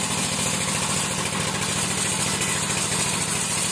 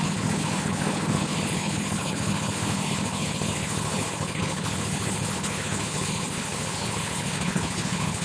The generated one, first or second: second